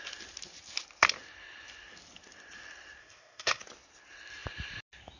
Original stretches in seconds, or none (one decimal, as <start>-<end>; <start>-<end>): 0.0-3.0; 3.6-5.2